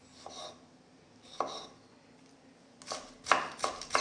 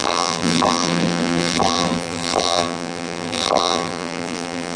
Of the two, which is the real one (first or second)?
first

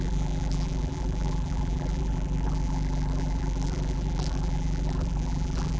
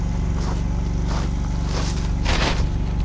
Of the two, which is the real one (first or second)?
second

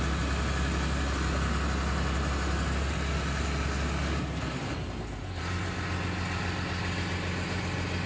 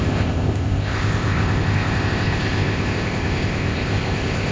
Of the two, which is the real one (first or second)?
first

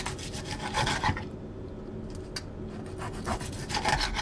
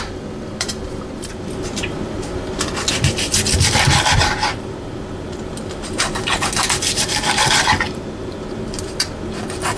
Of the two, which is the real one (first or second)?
first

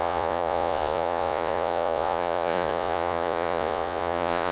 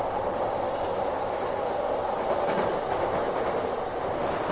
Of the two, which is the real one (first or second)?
second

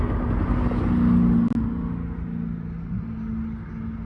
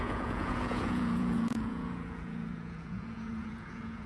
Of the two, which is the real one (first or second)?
first